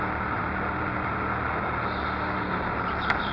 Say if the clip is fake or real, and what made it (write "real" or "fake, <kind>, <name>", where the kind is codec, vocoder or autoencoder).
real